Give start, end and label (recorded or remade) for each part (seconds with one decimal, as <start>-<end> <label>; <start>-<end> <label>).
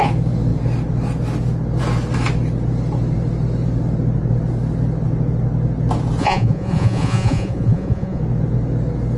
0.0-6.2 recorded; 6.2-8.2 remade; 8.2-9.2 recorded